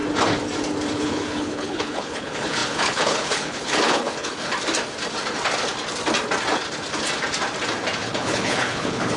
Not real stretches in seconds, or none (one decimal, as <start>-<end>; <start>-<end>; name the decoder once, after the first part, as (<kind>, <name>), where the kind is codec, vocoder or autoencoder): 0.9-4.5 (codec, HILCodec); 8.0-9.2